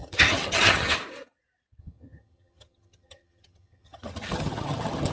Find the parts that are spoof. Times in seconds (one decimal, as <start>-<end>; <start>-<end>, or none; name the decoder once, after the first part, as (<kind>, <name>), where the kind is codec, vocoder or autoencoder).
0.0-1.0 (vocoder, HiFi-GAN); 1.8-5.1